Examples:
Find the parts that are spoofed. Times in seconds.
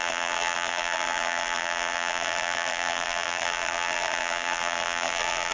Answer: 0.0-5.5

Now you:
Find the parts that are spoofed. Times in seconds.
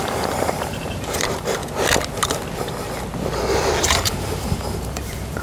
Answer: 0.0-1.6; 3.8-5.4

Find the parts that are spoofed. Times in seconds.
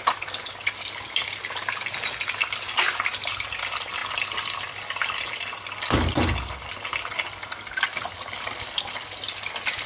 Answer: none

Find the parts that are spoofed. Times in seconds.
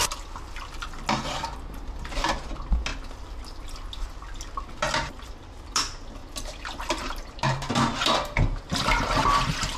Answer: 6.2-6.8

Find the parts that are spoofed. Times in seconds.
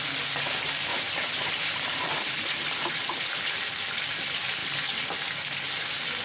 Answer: 0.9-3.4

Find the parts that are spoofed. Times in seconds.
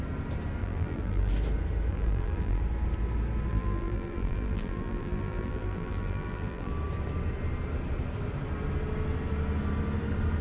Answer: 0.6-1.3; 1.9-2.6; 3.5-6.7